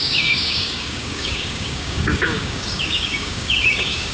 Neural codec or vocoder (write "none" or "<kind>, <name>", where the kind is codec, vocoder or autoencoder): codec, DAC